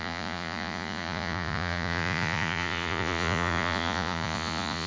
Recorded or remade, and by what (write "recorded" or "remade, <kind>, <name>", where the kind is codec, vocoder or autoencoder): remade, vocoder, Vocos